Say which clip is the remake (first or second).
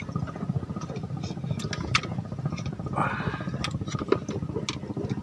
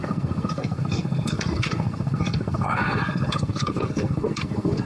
second